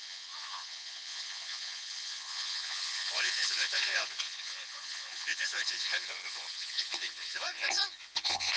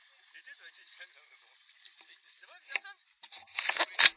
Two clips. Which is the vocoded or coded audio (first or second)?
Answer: first